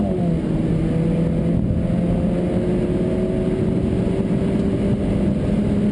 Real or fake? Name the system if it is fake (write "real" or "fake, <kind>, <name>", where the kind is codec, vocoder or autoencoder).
real